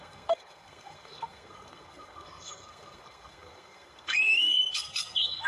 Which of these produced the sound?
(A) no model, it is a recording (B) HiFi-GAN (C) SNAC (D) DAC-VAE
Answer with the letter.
C